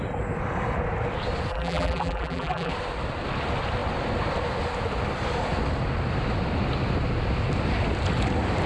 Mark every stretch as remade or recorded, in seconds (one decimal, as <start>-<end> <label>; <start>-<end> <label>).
0.0-1.5 recorded; 1.5-2.7 remade; 2.7-8.7 recorded